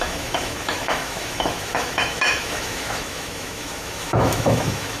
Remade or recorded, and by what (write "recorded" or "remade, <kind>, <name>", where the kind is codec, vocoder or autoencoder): remade, autoencoder, DAC-VAE